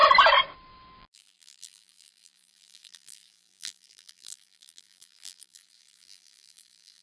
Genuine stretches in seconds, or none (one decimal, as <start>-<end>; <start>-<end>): 0.0-1.0

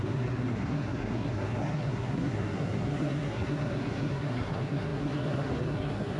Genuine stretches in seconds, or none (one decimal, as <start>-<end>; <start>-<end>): none

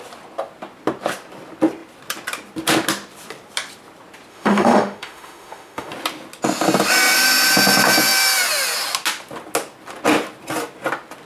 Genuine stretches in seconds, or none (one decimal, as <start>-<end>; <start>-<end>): 0.0-4.3; 5.9-11.3

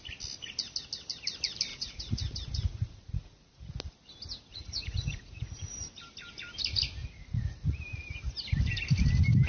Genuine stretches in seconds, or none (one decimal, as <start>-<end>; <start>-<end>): 0.0-1.7; 3.7-4.5; 5.7-7.0; 7.8-9.5

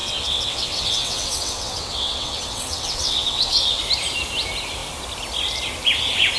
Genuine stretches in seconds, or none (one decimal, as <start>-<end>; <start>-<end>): 3.8-6.4

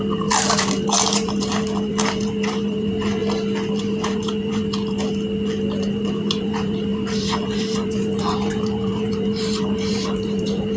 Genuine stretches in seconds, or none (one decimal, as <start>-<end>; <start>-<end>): 3.2-3.8; 4.6-5.8